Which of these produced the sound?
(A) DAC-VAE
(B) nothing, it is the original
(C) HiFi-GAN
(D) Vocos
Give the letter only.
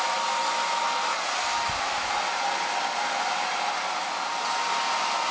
B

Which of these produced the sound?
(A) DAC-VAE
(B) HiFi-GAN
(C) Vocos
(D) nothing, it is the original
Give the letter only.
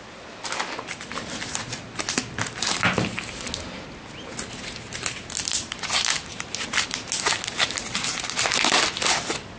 D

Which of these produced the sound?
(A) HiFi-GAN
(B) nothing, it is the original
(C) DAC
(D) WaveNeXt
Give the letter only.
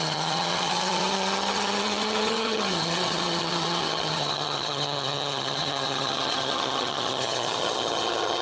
A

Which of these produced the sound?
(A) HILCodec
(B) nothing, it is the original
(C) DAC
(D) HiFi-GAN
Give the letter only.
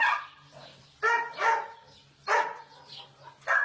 B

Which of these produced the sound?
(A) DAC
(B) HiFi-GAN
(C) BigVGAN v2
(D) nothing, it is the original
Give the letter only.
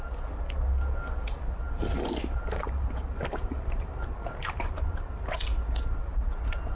D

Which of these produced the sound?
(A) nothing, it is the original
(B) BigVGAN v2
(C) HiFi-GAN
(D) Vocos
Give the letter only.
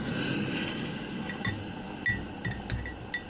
A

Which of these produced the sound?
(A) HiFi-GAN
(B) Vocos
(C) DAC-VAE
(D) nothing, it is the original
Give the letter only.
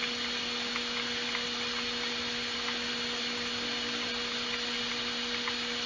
D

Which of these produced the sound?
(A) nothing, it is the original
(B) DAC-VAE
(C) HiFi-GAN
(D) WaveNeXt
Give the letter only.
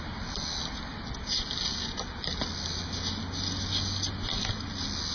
A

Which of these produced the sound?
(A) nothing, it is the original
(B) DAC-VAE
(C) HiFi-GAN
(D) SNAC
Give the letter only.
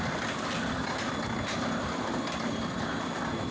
A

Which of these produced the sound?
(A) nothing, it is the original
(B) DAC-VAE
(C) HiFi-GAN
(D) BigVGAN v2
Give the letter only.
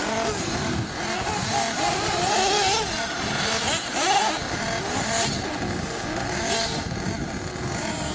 A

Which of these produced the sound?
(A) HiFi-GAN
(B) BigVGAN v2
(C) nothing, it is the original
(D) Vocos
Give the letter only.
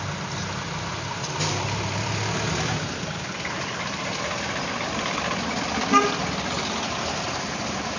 C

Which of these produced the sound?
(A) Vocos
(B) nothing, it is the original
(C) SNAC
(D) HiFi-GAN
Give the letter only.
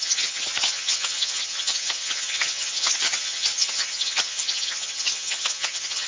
D